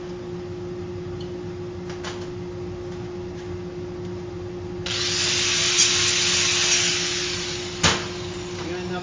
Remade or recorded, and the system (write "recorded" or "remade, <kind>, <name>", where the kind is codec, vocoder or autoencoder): recorded